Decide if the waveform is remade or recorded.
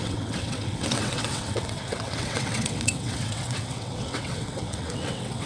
remade